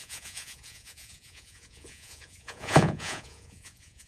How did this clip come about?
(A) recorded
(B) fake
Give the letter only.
B